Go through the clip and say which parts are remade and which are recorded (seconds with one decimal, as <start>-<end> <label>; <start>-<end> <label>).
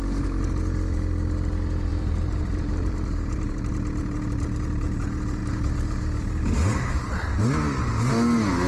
0.0-1.9 recorded; 1.9-3.5 remade; 3.5-5.4 recorded; 5.4-6.9 remade; 6.9-8.7 recorded